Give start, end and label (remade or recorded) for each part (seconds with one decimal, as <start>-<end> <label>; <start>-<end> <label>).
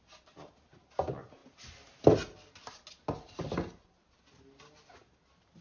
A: 0.0-5.6 recorded